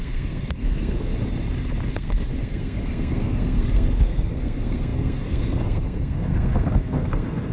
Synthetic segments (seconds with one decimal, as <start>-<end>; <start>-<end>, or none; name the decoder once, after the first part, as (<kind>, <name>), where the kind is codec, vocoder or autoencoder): 0.0-1.1 (codec, SNAC); 1.9-7.5